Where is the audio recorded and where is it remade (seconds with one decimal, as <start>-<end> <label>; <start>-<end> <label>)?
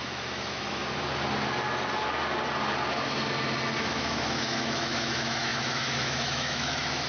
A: 0.0-0.8 remade; 0.8-3.8 recorded; 3.8-7.1 remade